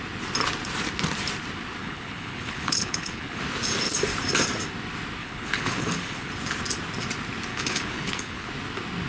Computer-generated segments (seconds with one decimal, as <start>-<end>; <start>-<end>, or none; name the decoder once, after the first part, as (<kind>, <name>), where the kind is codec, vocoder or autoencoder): 1.8-3.4 (codec, HILCodec); 5.2-6.3; 7.5-8.5